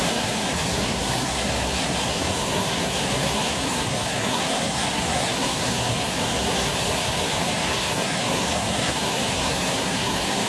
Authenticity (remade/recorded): remade